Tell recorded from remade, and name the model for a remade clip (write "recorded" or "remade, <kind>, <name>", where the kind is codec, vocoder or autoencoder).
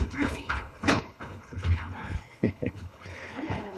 remade, codec, HILCodec